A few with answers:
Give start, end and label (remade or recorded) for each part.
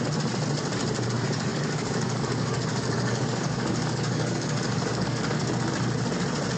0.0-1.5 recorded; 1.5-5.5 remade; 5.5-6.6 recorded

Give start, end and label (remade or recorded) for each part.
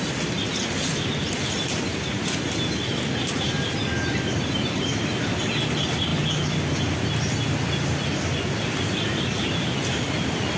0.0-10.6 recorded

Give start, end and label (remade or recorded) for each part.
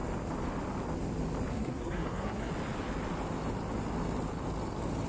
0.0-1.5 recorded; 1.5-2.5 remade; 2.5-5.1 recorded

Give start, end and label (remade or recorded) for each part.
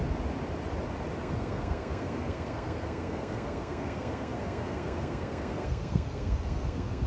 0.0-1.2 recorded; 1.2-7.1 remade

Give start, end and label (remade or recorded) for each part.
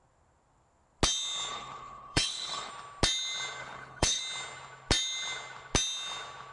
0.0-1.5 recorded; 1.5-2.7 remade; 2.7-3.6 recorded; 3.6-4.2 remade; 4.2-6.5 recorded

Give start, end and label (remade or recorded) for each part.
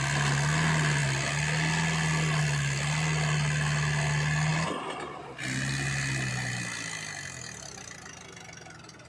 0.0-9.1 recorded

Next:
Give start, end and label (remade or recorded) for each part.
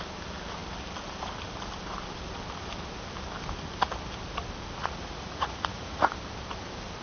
0.0-4.8 recorded; 4.8-6.1 remade; 6.1-7.0 recorded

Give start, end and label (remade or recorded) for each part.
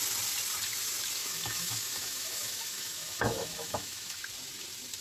0.0-1.2 recorded; 1.2-4.2 remade; 4.2-5.0 recorded